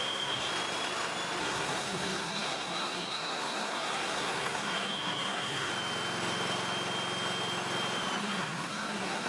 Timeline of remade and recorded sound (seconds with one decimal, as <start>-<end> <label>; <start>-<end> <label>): 0.0-0.5 remade; 0.5-1.4 recorded; 1.4-5.7 remade; 5.7-8.2 recorded; 8.2-9.3 remade